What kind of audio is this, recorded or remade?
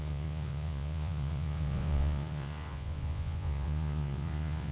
remade